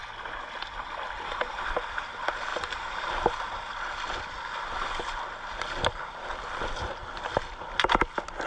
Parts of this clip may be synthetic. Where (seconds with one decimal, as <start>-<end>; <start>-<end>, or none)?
none